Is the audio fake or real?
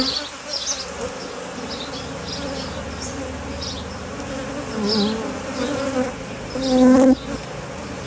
real